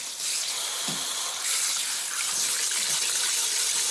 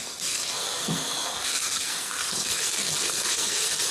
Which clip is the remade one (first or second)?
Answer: second